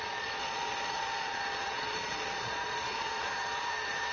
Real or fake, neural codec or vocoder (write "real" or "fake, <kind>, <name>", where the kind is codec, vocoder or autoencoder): fake, vocoder, Vocos